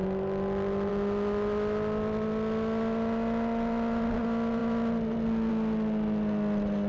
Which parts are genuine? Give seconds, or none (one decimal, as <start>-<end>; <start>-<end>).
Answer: 0.0-6.9